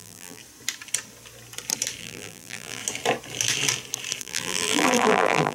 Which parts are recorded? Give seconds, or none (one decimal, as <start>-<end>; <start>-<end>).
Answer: 0.4-2.0; 2.8-4.2